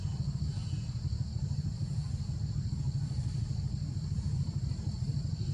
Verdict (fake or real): real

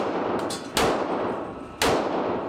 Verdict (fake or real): real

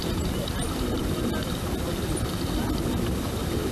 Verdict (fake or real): real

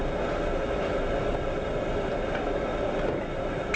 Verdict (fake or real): real